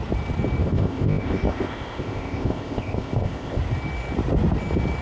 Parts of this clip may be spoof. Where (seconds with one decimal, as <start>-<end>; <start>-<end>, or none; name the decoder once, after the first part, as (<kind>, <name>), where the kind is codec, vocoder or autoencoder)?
0.6-3.6 (codec, ZipCodec)